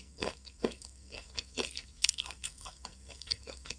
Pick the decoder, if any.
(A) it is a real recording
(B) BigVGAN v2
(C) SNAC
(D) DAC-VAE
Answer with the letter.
C